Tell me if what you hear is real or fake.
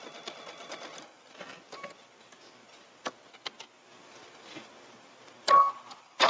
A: real